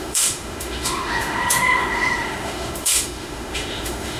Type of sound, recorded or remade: remade